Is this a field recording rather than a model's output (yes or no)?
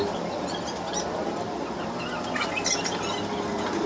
yes